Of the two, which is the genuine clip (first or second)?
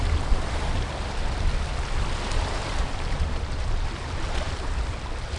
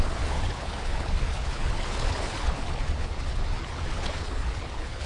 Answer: first